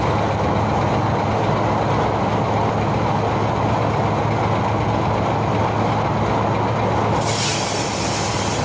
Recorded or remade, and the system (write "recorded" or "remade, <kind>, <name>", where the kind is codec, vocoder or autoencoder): recorded